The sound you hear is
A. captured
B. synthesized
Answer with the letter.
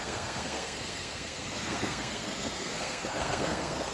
B